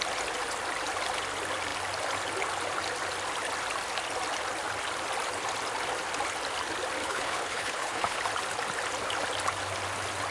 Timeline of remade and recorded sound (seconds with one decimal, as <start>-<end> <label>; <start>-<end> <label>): 0.0-7.0 recorded; 7.0-8.2 remade; 8.2-10.3 recorded